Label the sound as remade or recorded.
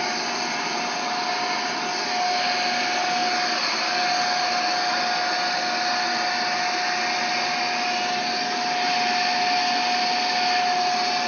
recorded